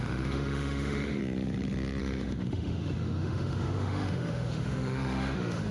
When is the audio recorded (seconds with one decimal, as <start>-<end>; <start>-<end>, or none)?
1.2-2.0